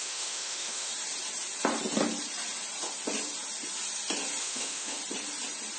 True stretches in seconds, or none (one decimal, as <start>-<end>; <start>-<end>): 0.9-4.4; 5.0-5.8